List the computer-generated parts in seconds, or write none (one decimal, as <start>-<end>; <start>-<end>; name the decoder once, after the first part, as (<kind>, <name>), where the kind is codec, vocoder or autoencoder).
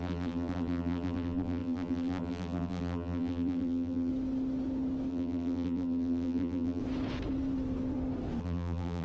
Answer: 0.0-4.1 (vocoder, BigVGAN v2); 5.1-6.8; 8.4-9.0